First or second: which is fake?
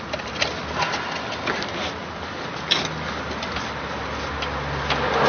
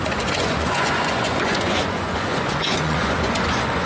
second